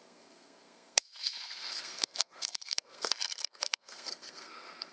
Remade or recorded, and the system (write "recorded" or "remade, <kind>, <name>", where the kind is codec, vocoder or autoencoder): remade, codec, SNAC